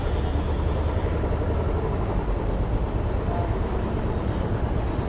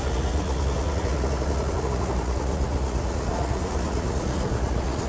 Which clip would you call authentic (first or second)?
first